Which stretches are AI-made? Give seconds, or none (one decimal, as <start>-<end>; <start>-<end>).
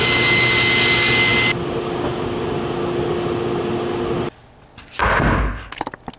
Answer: none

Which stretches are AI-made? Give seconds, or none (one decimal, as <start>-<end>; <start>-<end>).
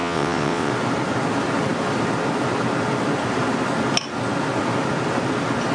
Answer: 0.0-0.7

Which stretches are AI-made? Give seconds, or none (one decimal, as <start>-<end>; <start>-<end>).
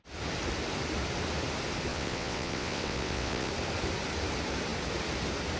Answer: 1.9-3.5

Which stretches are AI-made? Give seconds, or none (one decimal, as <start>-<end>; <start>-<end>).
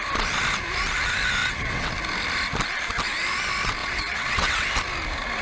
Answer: 1.4-1.9; 3.8-4.7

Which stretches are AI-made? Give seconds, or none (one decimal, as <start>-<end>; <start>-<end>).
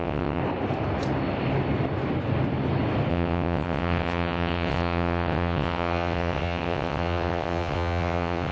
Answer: 0.0-0.4; 3.1-8.5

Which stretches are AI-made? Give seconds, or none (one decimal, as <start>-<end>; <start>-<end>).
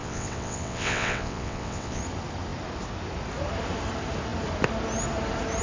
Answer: 0.0-2.0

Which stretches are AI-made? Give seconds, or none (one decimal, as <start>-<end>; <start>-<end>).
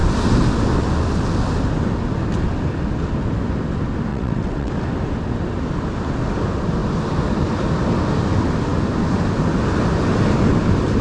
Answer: 4.1-4.7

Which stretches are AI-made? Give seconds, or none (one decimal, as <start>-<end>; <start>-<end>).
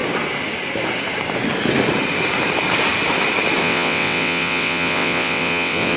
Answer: 3.6-6.0